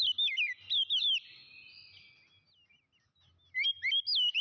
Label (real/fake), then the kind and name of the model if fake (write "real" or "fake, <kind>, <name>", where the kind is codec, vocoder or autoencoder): real